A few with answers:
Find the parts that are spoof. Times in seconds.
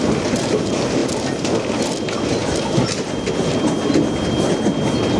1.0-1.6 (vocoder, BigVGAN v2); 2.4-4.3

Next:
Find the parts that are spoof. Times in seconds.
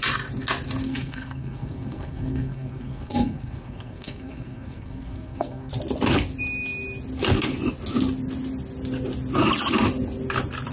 0.8-5.7 (codec, SNAC)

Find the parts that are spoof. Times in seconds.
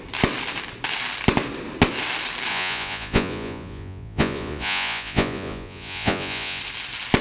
2.5-6.6 (vocoder, Vocos)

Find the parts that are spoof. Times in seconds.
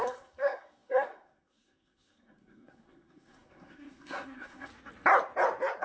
0.0-4.7 (codec, SNAC)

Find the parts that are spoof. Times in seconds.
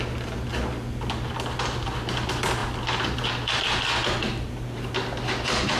none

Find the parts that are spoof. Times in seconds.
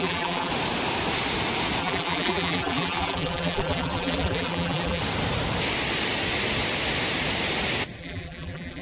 0.0-0.5 (vocoder, BigVGAN v2); 1.8-5.0; 8.0-8.8